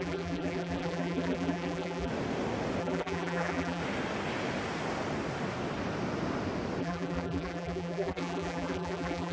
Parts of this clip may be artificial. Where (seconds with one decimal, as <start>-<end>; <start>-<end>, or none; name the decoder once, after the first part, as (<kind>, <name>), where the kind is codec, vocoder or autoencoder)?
0.0-2.1 (vocoder, BigVGAN v2); 2.8-3.8; 6.8-9.3